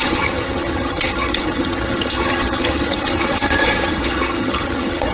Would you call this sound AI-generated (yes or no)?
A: yes